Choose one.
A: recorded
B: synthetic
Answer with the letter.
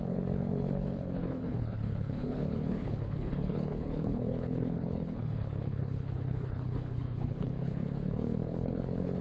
B